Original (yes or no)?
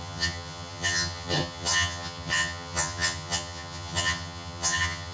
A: no